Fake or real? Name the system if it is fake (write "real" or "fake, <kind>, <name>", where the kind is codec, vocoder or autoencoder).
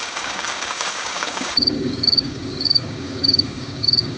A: fake, codec, DAC